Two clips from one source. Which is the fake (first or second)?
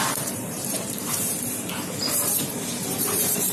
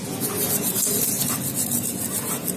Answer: first